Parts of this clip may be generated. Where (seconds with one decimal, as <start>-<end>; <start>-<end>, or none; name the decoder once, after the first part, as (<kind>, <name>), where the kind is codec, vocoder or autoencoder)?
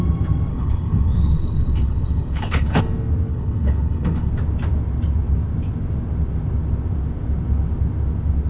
0.5-2.8 (codec, HILCodec); 3.3-4.3